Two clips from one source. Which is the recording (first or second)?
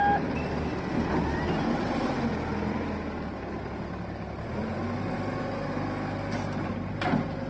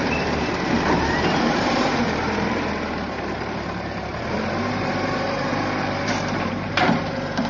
first